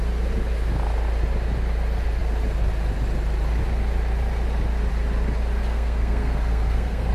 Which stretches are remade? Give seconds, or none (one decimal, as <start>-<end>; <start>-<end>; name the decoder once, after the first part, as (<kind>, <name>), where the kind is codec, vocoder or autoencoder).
5.7-7.1 (codec, SNAC)